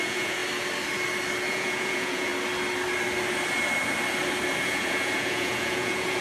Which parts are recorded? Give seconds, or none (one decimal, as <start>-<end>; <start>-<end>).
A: 0.4-1.5; 2.3-4.6